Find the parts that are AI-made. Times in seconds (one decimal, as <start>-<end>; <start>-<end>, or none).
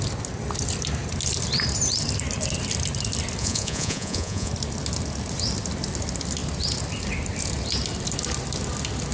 3.4-4.5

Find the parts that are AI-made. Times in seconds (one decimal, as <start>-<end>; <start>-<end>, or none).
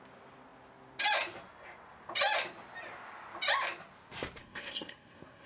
4.4-5.5